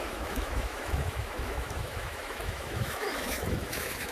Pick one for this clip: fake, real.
fake